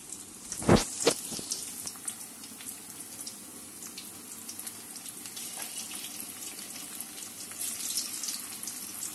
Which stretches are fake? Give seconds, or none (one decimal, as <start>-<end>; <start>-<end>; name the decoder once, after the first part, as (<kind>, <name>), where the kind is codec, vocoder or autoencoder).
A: none